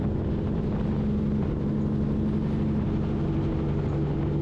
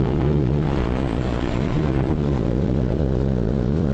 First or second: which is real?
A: first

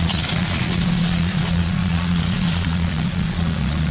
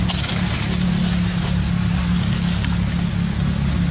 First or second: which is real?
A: second